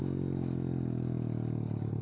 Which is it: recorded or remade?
recorded